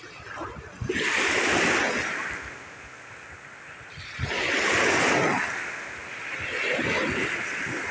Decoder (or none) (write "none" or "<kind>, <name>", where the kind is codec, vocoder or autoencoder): none